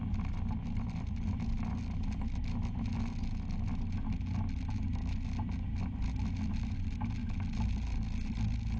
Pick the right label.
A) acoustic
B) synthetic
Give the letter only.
A